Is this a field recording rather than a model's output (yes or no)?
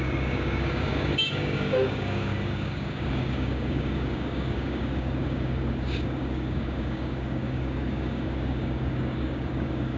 no